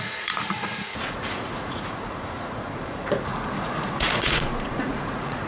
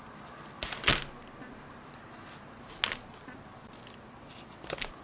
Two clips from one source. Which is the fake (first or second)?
first